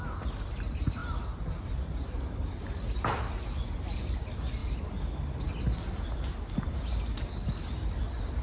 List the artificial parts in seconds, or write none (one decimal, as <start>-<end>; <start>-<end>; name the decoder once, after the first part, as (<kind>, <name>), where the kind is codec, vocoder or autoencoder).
none